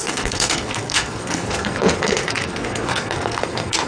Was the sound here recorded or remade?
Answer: remade